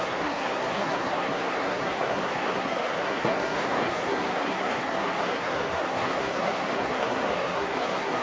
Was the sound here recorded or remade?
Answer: remade